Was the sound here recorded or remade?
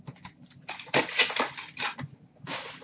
recorded